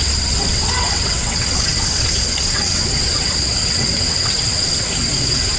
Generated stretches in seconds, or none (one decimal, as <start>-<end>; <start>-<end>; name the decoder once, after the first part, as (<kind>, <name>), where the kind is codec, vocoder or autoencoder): 0.0-5.6 (vocoder, WaveNeXt)